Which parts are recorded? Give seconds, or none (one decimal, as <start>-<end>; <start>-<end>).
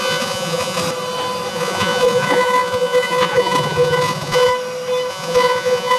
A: 0.8-1.5; 4.5-5.1